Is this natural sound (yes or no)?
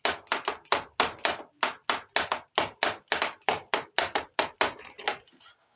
yes